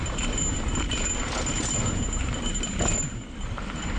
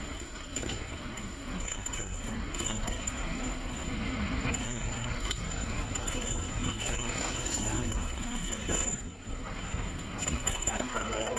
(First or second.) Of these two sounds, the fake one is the second